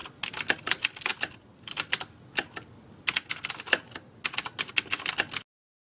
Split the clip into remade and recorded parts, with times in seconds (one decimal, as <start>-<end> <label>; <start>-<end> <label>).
0.0-5.9 recorded